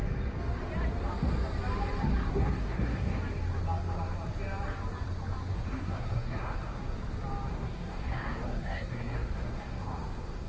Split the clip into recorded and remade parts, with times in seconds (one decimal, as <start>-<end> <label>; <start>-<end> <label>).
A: 0.0-2.3 recorded; 2.3-3.2 remade; 3.2-5.5 recorded; 5.5-6.9 remade; 6.9-7.5 recorded; 7.5-10.5 remade